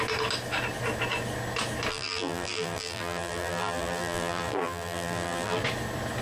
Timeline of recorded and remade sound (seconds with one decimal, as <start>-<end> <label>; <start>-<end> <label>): 0.0-1.9 recorded; 1.9-5.6 remade; 5.6-6.2 recorded